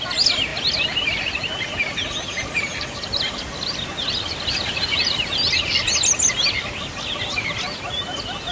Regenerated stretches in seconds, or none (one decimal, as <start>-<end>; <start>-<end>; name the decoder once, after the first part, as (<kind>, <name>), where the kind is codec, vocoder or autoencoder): 4.9-5.6 (vocoder, BigVGAN v2)